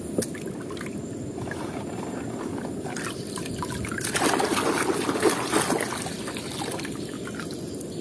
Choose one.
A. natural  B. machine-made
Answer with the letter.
A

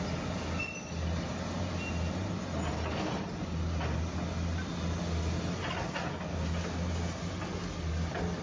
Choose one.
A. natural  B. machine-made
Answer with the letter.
A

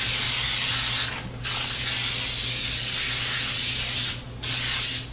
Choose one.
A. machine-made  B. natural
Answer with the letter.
B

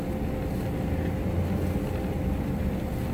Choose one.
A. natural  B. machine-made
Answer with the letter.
A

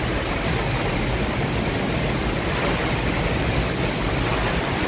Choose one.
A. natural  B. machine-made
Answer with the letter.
A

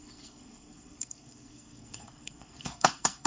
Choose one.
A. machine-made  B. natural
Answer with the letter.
A